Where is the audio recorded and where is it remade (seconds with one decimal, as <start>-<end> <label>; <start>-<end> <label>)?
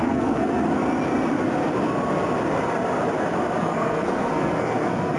0.0-0.5 remade; 0.5-3.6 recorded; 3.6-5.2 remade